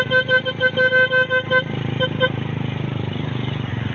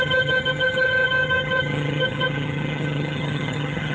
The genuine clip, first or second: first